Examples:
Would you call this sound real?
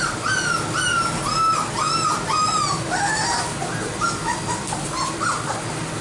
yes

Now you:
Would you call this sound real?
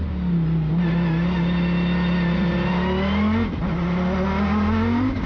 yes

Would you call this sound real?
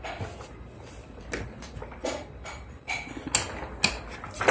yes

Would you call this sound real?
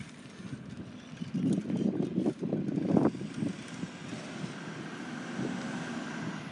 yes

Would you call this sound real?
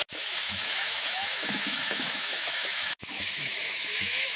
no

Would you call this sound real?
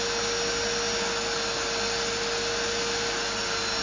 yes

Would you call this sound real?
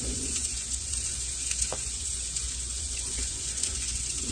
no